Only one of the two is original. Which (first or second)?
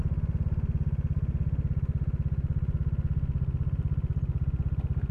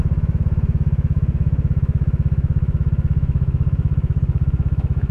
first